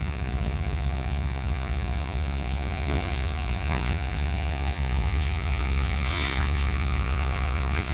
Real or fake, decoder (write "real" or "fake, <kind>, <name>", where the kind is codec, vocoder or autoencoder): fake, vocoder, Vocos